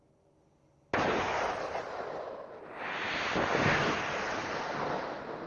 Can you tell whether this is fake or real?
real